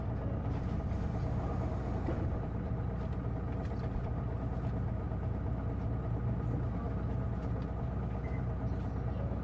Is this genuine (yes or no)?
yes